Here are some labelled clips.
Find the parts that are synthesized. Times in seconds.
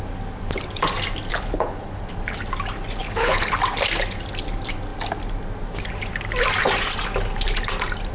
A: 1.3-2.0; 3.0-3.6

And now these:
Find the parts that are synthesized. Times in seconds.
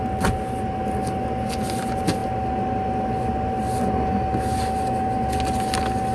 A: none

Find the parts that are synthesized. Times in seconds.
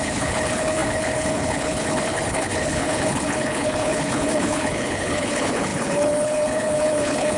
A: 0.0-7.4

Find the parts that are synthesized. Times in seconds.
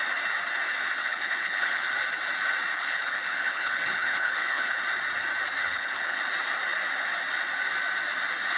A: 1.0-1.9; 2.7-4.8; 5.6-6.2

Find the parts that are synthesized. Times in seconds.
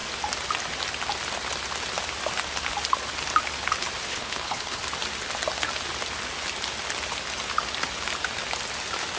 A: 4.1-4.8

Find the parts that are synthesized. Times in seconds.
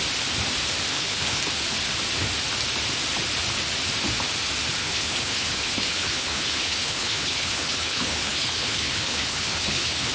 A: 0.9-1.4; 4.8-10.1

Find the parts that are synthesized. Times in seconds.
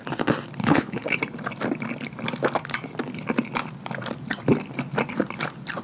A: 0.6-1.2